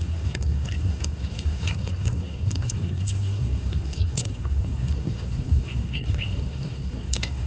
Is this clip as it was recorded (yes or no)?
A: no